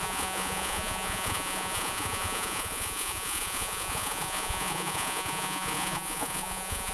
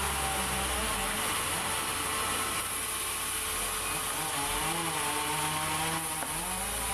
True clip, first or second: second